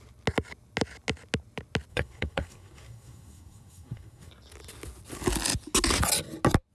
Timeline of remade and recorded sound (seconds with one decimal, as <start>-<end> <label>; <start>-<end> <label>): 0.0-1.9 recorded; 1.9-4.3 remade; 4.3-6.7 recorded